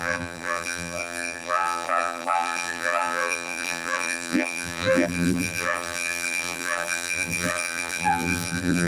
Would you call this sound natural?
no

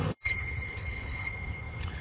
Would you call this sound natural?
no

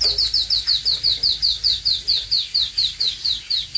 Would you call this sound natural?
yes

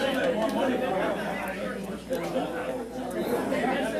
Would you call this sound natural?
yes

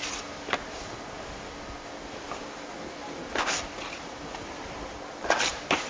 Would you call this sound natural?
yes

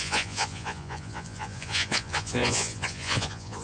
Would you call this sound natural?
no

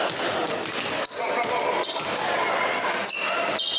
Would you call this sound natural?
yes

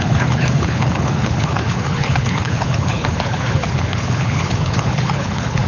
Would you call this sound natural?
no